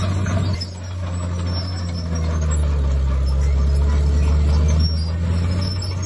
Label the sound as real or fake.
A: real